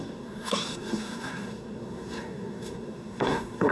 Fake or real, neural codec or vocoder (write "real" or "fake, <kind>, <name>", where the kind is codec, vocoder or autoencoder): fake, codec, SNAC